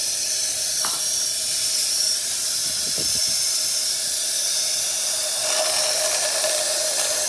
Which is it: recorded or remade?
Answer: recorded